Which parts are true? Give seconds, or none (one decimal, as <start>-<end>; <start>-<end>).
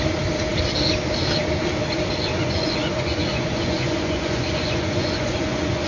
0.0-2.3